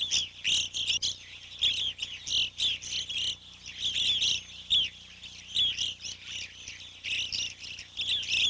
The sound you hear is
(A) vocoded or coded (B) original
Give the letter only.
B